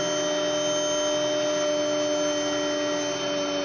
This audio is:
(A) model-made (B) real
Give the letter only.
B